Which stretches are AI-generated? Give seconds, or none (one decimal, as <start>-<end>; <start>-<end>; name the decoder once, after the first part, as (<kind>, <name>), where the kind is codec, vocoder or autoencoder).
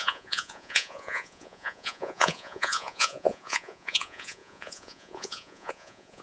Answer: 0.0-6.2 (vocoder, Vocos)